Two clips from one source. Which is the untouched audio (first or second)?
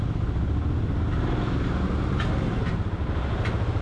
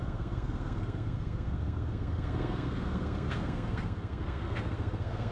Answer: first